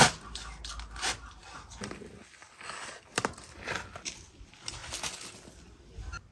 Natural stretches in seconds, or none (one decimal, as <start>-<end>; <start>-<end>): 0.0-6.3